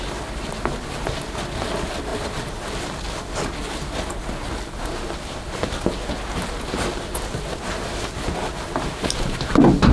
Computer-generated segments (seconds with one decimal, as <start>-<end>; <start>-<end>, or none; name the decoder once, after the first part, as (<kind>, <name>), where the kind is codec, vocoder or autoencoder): none